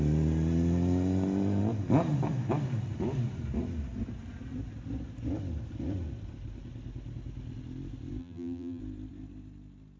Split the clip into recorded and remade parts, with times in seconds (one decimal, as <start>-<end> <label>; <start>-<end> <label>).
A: 0.0-8.2 recorded; 8.2-8.8 remade; 8.8-10.0 recorded